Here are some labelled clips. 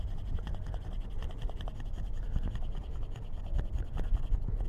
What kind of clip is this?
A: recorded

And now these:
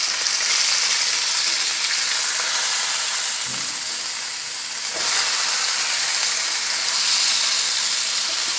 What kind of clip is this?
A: recorded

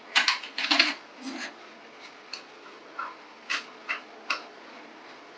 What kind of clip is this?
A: recorded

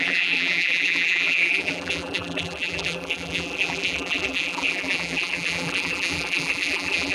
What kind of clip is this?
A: remade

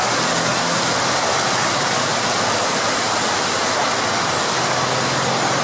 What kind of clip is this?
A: recorded